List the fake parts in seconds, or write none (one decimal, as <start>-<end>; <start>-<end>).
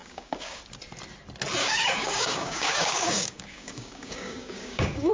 0.0-0.6; 1.6-5.1